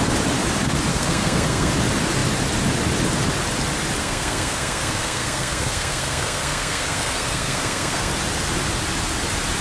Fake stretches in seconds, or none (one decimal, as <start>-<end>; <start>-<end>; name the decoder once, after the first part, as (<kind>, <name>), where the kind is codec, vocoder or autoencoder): 0.9-1.7 (codec, SNAC); 4.0-8.1